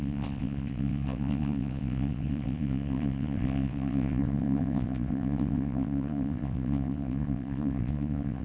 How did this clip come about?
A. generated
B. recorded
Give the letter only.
A